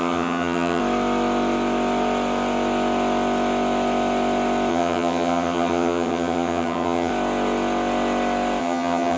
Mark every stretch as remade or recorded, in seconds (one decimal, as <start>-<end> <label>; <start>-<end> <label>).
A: 0.0-0.8 remade; 0.8-4.7 recorded; 4.7-7.1 remade; 7.1-8.6 recorded; 8.6-9.2 remade